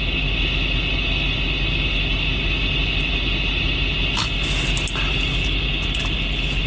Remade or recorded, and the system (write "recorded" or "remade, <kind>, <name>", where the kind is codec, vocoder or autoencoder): recorded